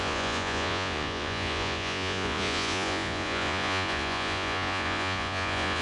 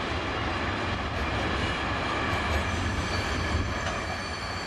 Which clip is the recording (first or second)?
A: second